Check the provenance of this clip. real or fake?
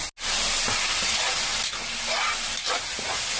real